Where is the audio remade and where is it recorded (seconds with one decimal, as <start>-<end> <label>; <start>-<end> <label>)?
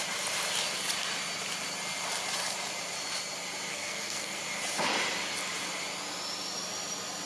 0.0-3.7 recorded; 3.7-4.4 remade; 4.4-7.3 recorded